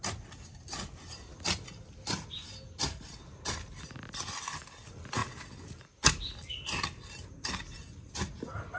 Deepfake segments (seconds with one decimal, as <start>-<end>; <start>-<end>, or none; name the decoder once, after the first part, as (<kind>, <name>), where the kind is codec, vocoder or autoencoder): none